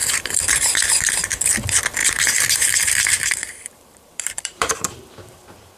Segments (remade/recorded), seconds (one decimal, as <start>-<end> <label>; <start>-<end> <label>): 0.0-1.2 remade; 1.2-2.0 recorded; 2.0-5.8 remade